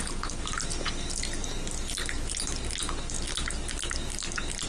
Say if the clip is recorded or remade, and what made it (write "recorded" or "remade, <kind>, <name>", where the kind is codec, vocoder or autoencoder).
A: recorded